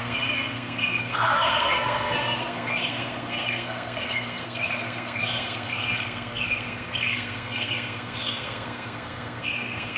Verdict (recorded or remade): remade